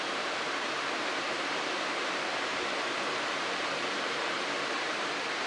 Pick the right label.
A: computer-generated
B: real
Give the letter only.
A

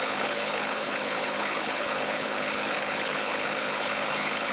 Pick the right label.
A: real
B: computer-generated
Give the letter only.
B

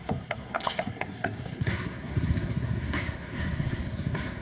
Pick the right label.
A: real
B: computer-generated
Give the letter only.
B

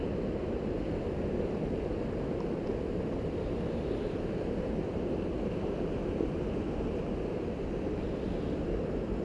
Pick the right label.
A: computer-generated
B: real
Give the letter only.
B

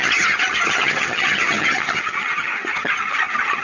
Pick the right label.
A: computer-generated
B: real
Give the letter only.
A